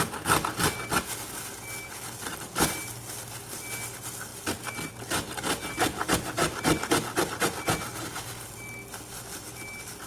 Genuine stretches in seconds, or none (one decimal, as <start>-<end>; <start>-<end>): 0.0-10.1